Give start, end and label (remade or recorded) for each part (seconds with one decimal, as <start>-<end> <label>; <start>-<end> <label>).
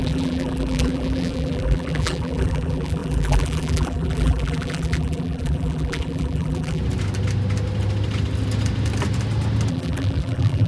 0.0-6.8 remade; 6.8-9.7 recorded; 9.7-10.7 remade